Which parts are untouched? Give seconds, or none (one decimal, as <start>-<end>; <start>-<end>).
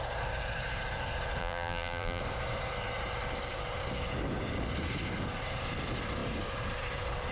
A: 0.0-1.4; 2.2-7.3